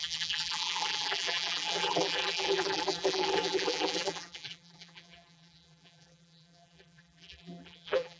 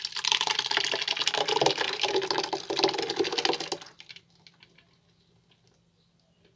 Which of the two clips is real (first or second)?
second